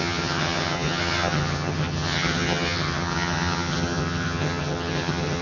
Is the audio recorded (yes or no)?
no